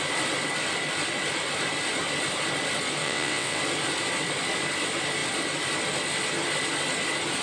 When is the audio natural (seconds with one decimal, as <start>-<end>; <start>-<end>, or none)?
0.0-3.0; 3.6-7.4